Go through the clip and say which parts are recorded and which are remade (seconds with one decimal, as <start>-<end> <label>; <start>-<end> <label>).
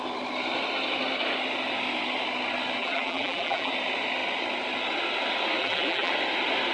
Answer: 0.0-2.8 recorded; 2.8-3.7 remade; 3.7-5.6 recorded; 5.6-6.1 remade; 6.1-6.7 recorded